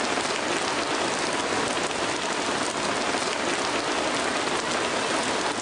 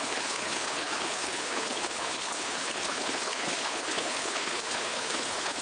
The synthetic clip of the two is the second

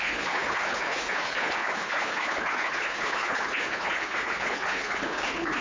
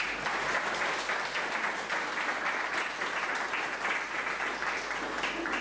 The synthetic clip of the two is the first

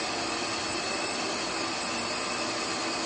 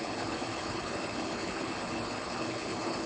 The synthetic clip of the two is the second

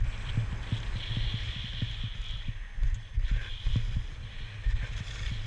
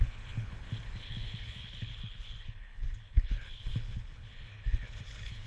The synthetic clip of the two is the second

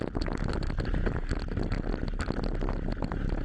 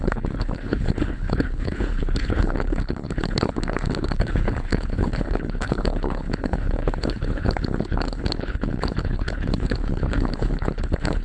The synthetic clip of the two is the second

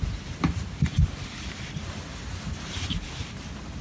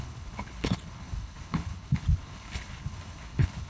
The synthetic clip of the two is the second